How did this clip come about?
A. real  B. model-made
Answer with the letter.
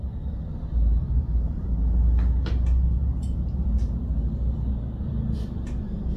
A